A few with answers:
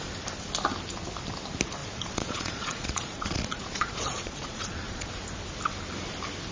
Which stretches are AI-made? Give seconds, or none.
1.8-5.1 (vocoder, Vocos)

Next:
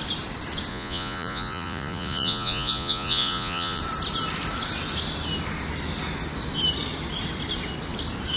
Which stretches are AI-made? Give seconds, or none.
0.7-3.8 (vocoder, Vocos)

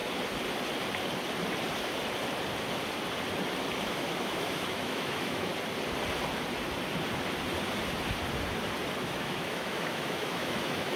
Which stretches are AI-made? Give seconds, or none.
3.8-5.5 (autoencoder, DAC-VAE); 9.0-11.0

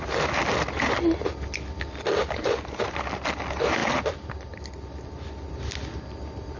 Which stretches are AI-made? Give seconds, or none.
none

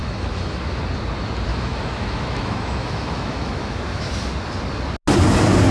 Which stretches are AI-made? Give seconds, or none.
0.0-0.8 (autoencoder, DAC-VAE); 1.5-4.2

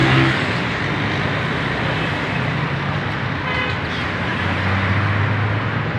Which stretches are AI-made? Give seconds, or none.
none

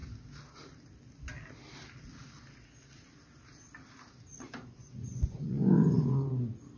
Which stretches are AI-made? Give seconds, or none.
4.3-6.3 (vocoder, Vocos)

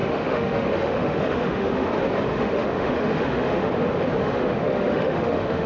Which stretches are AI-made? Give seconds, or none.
0.0-1.9 (autoencoder, DAC-VAE); 2.3-3.7; 4.2-5.7